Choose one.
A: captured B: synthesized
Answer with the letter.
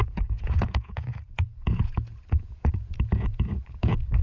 B